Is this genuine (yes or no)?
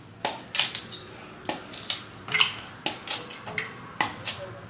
yes